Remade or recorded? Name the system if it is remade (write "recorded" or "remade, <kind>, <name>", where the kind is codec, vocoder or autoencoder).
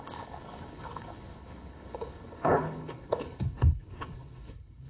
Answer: remade, codec, HILCodec